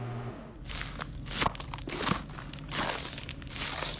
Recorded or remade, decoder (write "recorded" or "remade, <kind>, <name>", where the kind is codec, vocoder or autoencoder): recorded